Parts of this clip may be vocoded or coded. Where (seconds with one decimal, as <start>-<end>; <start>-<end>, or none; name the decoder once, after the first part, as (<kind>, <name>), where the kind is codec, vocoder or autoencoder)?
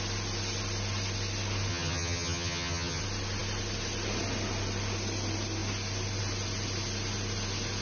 1.7-3.0 (vocoder, HiFi-GAN)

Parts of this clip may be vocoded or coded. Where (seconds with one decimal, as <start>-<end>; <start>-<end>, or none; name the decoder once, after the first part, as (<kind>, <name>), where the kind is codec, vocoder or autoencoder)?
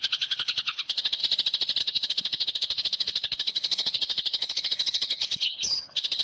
0.0-1.2 (codec, HILCodec); 1.8-6.2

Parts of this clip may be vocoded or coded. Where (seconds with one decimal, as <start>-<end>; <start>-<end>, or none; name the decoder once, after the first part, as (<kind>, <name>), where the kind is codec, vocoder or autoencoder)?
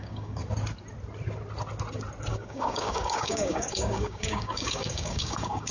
0.0-0.4 (codec, DAC); 2.3-5.7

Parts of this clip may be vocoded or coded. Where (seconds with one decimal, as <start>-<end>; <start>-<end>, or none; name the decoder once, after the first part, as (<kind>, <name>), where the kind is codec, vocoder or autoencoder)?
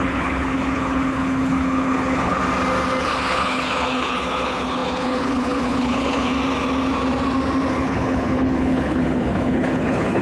0.0-2.4 (codec, HILCodec); 3.0-6.3; 7.7-10.2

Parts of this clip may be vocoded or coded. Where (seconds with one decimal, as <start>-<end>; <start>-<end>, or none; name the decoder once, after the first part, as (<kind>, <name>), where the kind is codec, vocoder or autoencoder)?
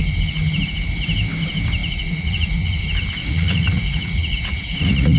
1.8-2.8 (vocoder, Vocos); 3.2-5.2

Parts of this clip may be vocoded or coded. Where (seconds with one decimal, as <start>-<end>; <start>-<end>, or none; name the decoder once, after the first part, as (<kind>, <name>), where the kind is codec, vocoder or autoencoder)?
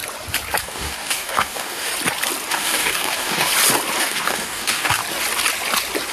0.6-1.9 (codec, DAC); 2.5-3.5; 4.0-5.0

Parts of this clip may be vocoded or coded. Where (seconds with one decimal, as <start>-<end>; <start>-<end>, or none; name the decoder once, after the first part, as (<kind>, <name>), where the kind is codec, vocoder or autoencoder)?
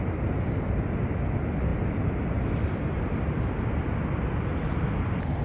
none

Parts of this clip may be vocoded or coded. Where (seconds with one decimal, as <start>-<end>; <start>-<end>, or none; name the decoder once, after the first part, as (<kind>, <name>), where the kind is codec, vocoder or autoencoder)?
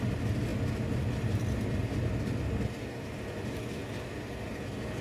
none